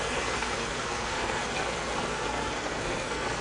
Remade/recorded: remade